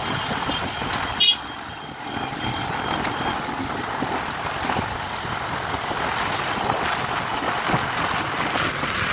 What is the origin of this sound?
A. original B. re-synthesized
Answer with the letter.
A